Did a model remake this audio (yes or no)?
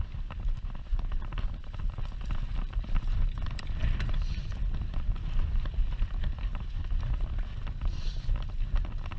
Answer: no